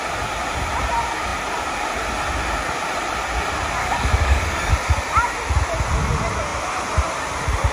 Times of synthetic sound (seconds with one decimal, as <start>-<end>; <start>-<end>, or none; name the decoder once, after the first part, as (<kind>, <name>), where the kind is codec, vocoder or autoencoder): 3.8-4.7 (codec, DAC)